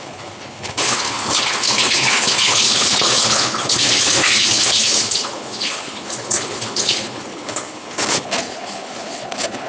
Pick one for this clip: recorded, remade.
remade